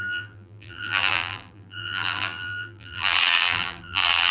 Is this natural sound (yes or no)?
no